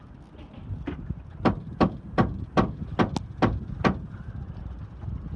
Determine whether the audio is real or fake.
real